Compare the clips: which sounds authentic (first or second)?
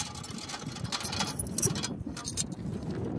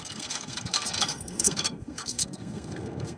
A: first